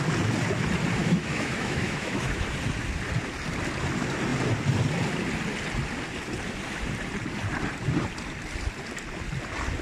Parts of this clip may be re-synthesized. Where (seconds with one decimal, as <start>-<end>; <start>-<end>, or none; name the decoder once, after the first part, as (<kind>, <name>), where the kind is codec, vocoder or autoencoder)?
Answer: 1.0-2.4 (autoencoder, DAC-VAE)

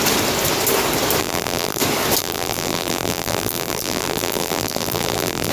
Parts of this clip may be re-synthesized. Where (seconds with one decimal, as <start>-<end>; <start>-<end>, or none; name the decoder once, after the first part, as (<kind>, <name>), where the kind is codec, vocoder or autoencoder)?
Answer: 1.2-1.8 (vocoder, BigVGAN v2); 2.2-5.5

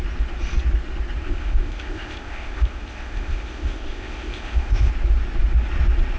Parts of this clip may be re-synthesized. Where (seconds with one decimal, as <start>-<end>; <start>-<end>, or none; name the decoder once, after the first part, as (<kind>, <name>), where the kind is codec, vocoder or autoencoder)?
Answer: 1.2-4.9 (codec, ZipCodec)

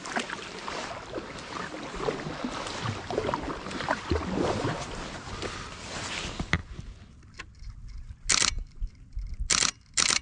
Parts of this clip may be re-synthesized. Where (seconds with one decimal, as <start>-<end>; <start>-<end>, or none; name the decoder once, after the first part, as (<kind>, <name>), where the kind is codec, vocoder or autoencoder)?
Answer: none

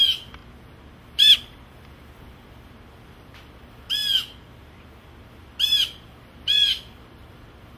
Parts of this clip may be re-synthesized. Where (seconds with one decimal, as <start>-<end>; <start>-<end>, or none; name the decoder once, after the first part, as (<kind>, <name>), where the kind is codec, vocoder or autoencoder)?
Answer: 0.0-0.4 (vocoder, BigVGAN v2); 1.7-4.0; 4.8-7.8